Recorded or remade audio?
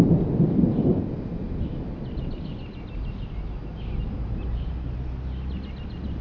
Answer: recorded